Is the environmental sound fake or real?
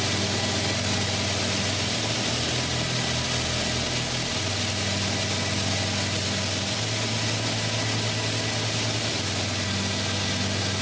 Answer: real